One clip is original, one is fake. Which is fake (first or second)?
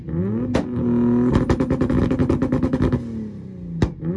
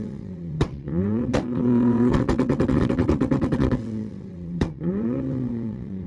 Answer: second